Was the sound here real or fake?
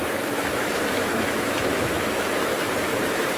fake